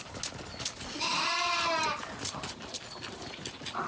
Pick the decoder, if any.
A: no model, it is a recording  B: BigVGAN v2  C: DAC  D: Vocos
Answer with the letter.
A